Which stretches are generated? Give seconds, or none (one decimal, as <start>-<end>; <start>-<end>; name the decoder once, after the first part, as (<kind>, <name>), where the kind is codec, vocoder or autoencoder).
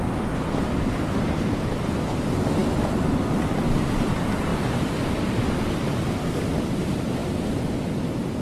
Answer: none